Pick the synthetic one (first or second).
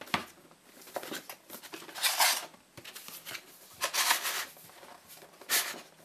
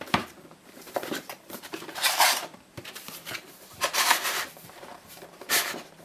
second